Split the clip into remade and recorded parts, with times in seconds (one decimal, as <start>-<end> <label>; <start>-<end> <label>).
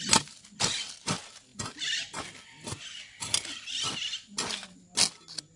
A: 0.0-5.6 recorded